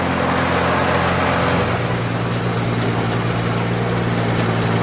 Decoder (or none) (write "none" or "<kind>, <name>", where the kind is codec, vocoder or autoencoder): none